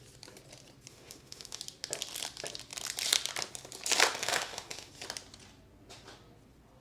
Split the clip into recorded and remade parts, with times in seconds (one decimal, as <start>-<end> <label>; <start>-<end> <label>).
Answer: 0.0-0.9 recorded; 0.9-1.6 remade; 1.6-4.2 recorded; 4.2-4.9 remade; 4.9-6.8 recorded